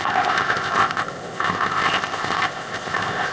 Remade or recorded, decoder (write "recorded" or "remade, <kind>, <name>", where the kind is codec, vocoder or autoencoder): remade, codec, ZipCodec